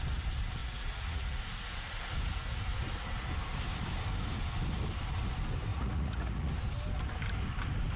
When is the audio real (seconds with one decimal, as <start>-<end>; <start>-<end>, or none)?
0.0-0.6; 1.4-5.7; 6.5-8.0

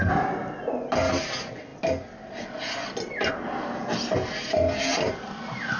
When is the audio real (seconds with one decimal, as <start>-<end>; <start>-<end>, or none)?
0.0-5.8

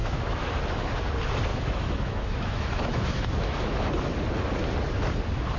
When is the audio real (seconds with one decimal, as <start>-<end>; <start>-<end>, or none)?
0.6-1.5; 3.9-5.6